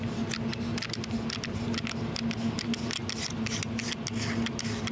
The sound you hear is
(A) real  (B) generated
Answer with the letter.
A